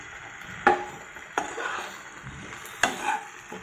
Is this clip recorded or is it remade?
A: recorded